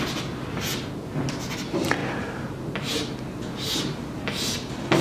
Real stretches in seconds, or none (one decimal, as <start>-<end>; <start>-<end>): 0.0-5.0